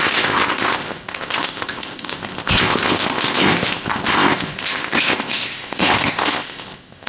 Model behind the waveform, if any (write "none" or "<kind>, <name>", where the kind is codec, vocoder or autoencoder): codec, ZipCodec